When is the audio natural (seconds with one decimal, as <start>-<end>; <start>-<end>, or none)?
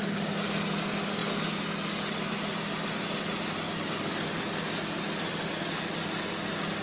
0.0-6.8